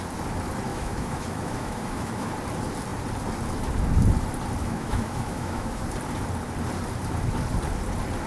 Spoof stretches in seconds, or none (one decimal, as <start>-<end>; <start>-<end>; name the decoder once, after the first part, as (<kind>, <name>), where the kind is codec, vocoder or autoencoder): 0.7-2.3 (autoencoder, DAC-VAE); 4.6-5.8